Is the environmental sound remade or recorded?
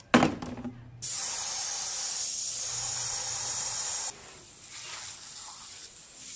recorded